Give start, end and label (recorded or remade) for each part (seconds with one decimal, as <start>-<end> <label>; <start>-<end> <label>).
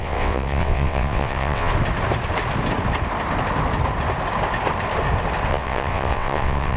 0.0-1.7 remade; 1.7-5.5 recorded; 5.5-6.8 remade